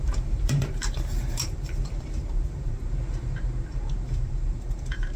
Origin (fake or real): fake